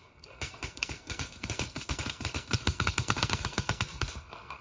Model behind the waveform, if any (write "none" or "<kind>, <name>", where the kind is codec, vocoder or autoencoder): codec, SNAC